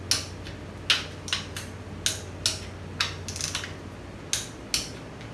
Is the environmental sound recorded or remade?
recorded